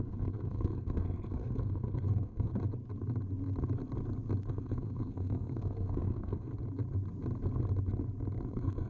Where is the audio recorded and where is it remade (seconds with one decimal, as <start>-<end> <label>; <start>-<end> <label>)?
0.0-2.5 remade; 2.5-4.5 recorded; 4.5-6.5 remade; 6.5-8.5 recorded; 8.5-8.9 remade